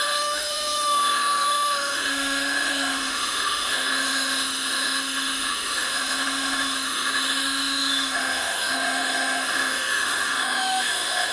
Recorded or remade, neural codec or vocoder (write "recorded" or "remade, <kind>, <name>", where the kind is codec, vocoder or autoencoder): remade, autoencoder, DAC-VAE